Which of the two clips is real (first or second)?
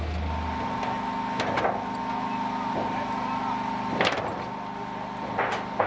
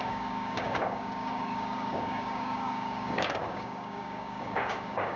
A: first